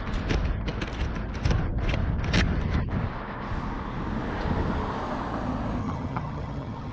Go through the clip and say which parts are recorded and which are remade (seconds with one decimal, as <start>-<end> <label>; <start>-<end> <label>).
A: 0.0-5.8 recorded; 5.8-6.9 remade